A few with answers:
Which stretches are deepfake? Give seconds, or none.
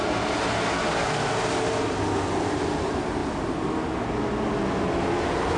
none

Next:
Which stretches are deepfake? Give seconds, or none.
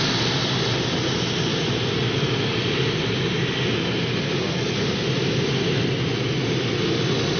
none